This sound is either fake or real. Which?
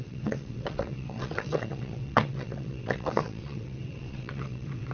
fake